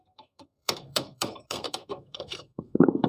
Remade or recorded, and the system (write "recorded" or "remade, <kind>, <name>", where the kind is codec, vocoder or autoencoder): remade, codec, SNAC